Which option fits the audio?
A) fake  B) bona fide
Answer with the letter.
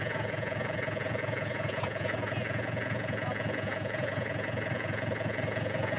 A